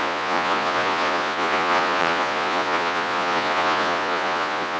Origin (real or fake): fake